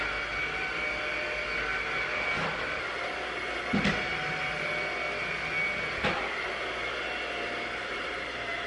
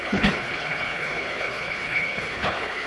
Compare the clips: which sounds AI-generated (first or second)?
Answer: second